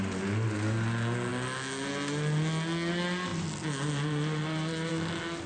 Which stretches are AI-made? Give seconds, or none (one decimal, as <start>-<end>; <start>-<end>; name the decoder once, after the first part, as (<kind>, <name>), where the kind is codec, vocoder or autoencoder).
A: 3.3-4.9 (vocoder, BigVGAN v2)